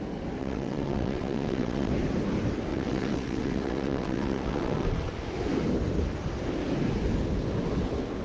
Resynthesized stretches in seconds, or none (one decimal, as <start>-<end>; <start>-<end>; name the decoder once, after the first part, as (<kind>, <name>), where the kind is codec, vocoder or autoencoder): 0.4-1.9 (vocoder, WaveNeXt); 2.7-5.1